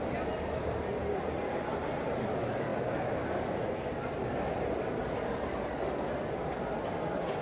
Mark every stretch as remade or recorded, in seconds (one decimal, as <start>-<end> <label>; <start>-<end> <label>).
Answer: 0.0-7.4 recorded